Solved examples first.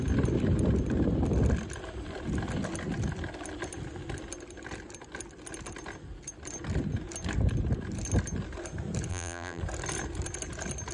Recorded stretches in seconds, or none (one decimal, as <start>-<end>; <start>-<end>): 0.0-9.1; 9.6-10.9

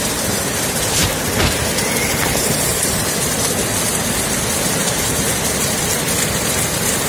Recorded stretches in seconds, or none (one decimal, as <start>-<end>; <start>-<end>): 0.0-1.0; 3.0-4.8; 5.4-7.1

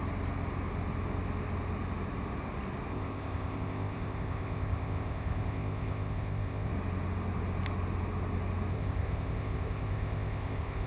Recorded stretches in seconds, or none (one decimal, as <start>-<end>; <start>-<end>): 0.0-2.9; 6.7-8.7